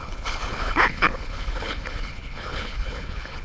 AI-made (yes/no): yes